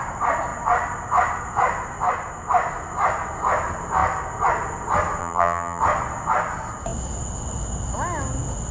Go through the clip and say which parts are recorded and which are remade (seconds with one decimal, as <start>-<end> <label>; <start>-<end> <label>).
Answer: 0.0-5.2 recorded; 5.2-5.8 remade; 5.8-8.7 recorded